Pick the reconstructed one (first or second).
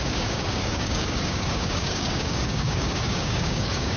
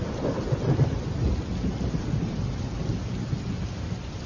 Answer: first